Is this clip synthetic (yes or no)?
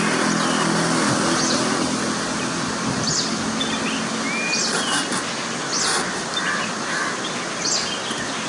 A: no